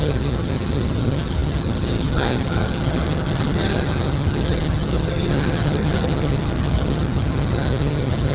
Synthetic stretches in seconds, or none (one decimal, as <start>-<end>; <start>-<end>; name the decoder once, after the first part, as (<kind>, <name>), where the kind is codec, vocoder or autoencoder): 0.0-8.3 (vocoder, HiFi-GAN)

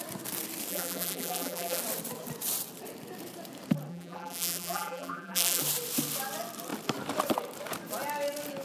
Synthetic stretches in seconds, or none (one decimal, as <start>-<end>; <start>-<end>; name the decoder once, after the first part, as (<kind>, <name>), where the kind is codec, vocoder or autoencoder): 0.7-1.8 (vocoder, BigVGAN v2); 3.9-5.6

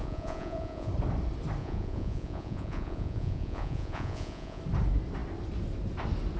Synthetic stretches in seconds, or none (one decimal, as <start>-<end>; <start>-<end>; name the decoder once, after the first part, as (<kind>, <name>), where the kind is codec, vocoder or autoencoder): 0.0-0.9 (vocoder, Vocos); 1.6-4.6

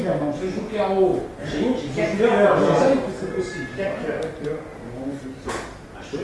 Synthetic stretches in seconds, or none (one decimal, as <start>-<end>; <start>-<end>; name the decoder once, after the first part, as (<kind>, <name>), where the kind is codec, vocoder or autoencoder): none

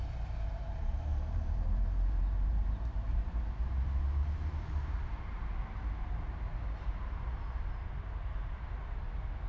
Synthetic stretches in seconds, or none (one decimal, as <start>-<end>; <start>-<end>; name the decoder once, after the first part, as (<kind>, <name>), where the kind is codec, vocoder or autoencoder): 1.1-3.2 (vocoder, BigVGAN v2)

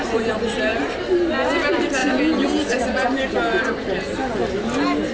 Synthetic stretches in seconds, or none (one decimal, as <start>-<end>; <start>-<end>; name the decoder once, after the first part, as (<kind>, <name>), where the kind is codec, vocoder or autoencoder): none

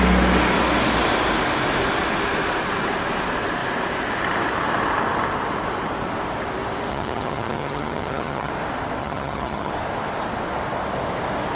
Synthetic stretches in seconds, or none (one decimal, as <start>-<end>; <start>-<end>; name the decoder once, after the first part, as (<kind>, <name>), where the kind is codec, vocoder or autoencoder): 6.9-8.5 (vocoder, HiFi-GAN); 9.0-9.7

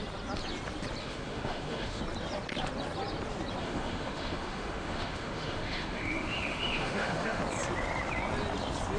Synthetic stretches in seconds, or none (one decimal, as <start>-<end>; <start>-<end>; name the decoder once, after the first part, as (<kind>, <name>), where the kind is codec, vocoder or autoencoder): 1.0-2.0 (autoencoder, DAC-VAE); 3.6-7.4